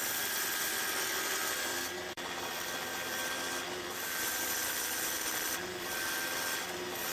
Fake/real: fake